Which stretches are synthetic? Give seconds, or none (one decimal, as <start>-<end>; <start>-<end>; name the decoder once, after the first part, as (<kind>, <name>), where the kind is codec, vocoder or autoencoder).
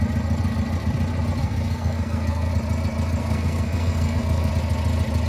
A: 1.4-2.5 (codec, SNAC); 3.2-4.5